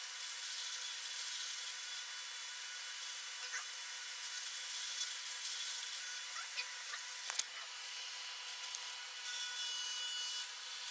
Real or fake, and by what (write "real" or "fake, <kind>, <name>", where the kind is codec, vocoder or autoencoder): real